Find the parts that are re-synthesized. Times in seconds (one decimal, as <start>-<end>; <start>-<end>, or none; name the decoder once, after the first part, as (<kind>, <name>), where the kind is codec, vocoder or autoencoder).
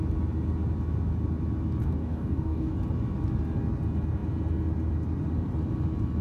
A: 1.8-2.7 (codec, DAC)